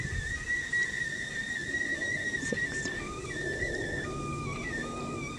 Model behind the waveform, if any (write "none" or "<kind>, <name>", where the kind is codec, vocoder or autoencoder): none